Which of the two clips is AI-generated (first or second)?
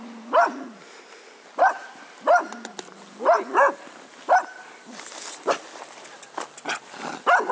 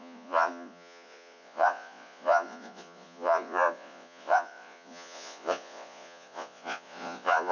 second